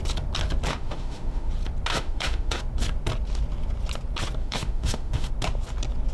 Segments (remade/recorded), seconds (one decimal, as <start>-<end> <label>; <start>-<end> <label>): 0.0-0.7 recorded; 0.7-1.5 remade; 1.5-1.9 recorded; 1.9-2.6 remade; 2.6-4.4 recorded; 4.4-5.3 remade; 5.3-6.1 recorded